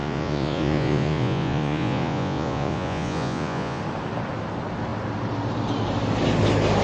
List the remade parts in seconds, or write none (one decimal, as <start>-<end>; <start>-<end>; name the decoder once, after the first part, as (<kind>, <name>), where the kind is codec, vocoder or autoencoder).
0.0-3.8 (vocoder, Vocos)